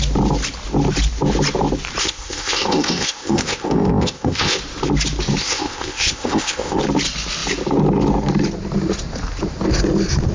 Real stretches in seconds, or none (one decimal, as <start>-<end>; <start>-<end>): 0.0-2.0; 4.6-5.4; 6.8-10.3

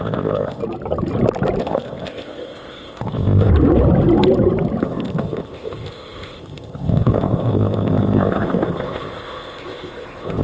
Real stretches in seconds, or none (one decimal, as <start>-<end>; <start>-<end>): 0.6-1.6; 3.5-4.8

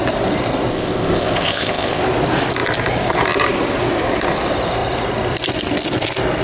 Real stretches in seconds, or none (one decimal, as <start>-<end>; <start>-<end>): 0.0-0.7; 2.0-6.4

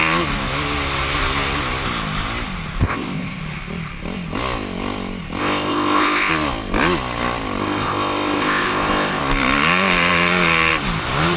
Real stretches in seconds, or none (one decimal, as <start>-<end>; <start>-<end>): 0.0-2.8; 3.4-5.4; 6.3-7.6; 9.2-11.4

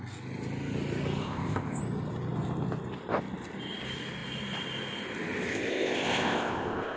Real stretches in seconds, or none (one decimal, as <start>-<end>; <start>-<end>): 0.0-1.2; 1.8-5.5

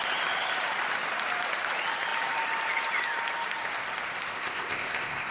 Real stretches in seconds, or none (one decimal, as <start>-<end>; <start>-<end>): 0.0-4.3

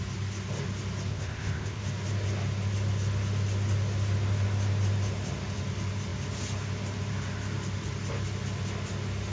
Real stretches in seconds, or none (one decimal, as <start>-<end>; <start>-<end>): 0.0-1.1; 1.8-9.3

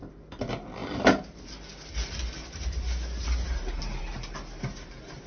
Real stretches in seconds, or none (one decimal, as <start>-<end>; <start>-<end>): 0.0-5.3